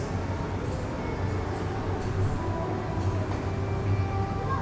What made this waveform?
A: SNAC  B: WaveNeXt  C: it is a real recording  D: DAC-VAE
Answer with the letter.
C